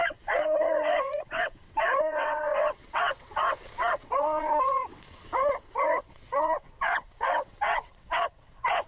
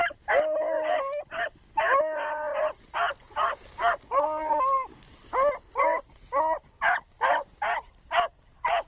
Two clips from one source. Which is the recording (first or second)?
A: second